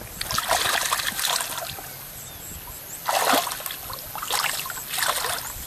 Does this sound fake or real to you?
real